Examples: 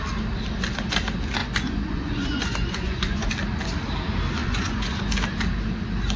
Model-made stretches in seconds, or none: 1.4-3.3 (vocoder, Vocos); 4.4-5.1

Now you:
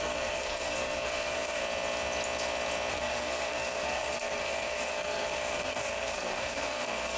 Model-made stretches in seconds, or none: 0.0-1.6 (codec, SNAC); 2.9-7.2

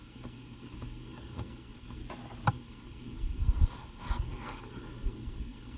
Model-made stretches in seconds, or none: 0.0-2.0 (codec, SNAC); 2.5-5.8

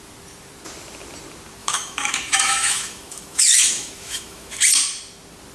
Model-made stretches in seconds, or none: 1.6-4.6 (autoencoder, DAC-VAE)

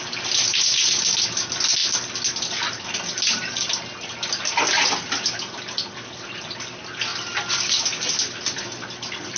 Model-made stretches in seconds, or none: none

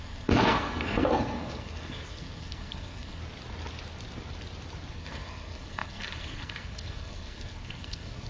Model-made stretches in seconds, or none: 0.0-3.2 (codec, SNAC); 4.9-8.3